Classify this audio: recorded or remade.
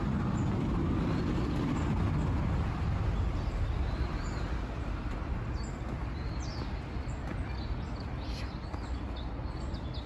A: recorded